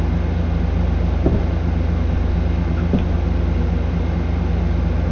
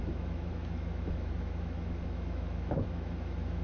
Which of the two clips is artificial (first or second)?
second